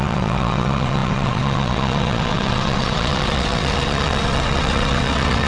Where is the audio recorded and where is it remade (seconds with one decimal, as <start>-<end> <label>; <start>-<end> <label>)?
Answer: 0.0-5.5 remade